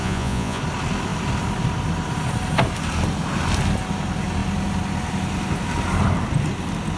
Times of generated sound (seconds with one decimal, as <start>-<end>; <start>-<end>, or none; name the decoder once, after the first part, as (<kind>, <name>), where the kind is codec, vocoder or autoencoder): 0.0-0.6 (vocoder, Vocos)